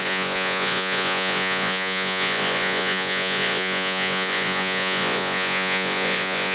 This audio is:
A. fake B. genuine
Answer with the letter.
A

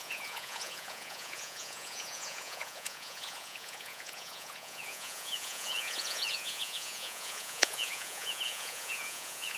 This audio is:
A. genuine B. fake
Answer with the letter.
B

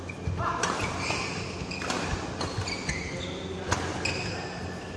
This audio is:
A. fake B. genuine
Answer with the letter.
B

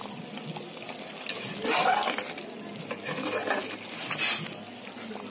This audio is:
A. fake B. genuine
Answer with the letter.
B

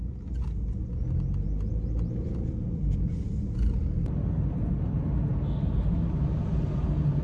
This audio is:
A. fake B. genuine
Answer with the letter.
B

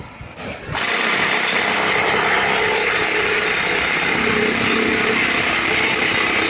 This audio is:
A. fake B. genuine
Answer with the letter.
B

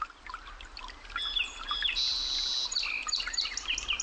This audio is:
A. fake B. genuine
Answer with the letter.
B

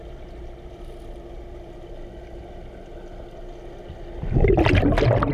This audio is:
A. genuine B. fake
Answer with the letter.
A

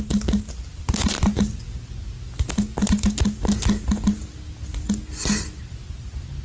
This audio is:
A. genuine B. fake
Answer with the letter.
A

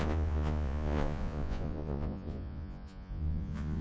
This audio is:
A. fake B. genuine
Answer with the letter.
A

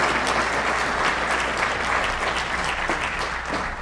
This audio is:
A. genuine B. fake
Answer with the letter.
A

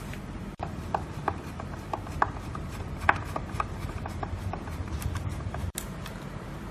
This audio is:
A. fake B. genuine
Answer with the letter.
A